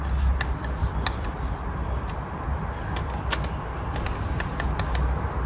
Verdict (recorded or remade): recorded